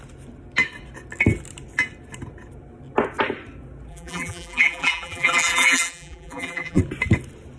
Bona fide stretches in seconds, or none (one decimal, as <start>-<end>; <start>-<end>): 0.0-3.9; 6.8-7.6